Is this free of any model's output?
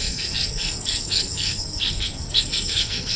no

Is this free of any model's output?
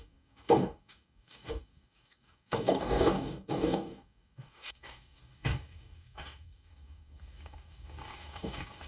no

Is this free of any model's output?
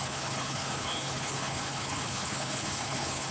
no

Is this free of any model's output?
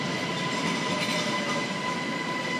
yes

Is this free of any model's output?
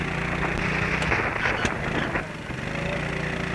yes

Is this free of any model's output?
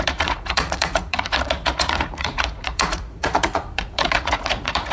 no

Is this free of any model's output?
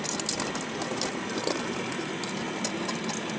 yes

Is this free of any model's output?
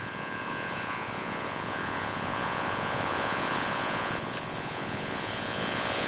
no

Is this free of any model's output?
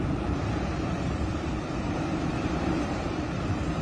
no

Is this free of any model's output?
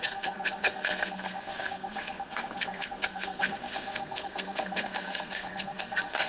no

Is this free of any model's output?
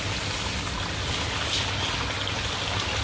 yes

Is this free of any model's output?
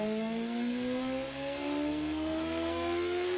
no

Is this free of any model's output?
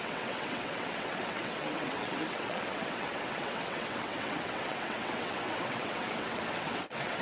no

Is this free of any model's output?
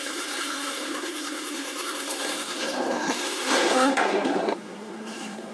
no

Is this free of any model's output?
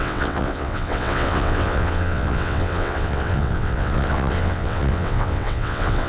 no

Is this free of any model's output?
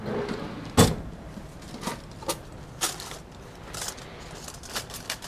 yes